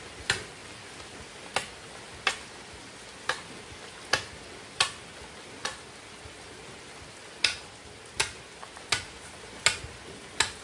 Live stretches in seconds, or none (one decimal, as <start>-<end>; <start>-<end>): 0.0-10.6